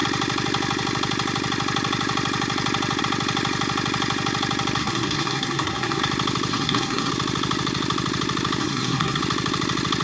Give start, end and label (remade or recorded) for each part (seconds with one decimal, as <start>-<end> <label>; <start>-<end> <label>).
0.0-4.8 recorded; 4.8-6.0 remade; 6.0-6.5 recorded; 6.5-7.1 remade; 7.1-8.6 recorded; 8.6-9.2 remade; 9.2-10.0 recorded